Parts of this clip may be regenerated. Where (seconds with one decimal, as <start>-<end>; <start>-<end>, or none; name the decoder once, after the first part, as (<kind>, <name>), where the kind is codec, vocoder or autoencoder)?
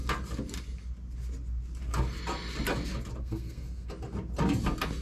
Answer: 3.2-3.9 (codec, SNAC)